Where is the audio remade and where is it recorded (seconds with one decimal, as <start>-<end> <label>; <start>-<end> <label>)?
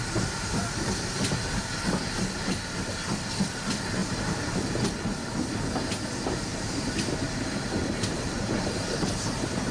0.0-4.0 recorded; 4.0-4.5 remade; 4.5-6.5 recorded; 6.5-9.7 remade